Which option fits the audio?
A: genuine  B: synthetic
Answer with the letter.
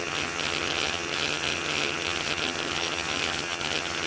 B